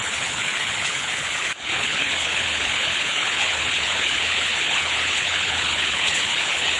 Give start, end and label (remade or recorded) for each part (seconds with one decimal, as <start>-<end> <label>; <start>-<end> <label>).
0.0-6.8 remade